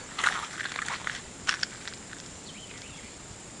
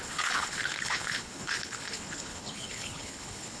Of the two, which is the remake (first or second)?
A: second